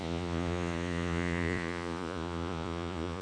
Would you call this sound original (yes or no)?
no